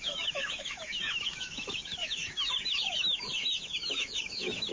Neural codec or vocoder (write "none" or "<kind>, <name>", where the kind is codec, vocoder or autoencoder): autoencoder, DAC-VAE